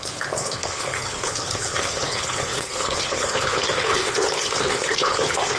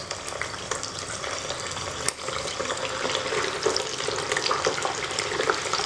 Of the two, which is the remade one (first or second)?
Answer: first